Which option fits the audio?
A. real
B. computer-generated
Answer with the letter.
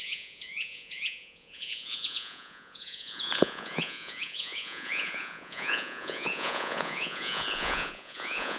B